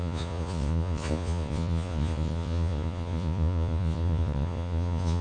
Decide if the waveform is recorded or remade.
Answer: remade